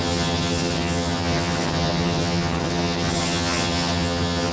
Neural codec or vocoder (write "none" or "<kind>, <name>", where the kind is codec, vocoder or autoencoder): vocoder, HiFi-GAN